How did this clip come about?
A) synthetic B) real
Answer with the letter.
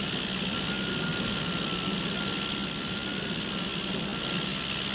B